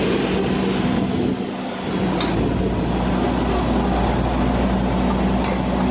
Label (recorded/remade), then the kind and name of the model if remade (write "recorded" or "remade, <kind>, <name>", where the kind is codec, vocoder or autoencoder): recorded